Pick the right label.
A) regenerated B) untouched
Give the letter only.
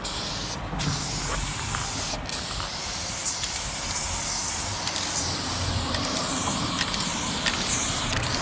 B